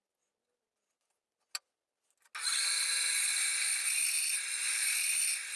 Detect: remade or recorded recorded